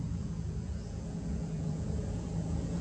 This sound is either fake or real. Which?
fake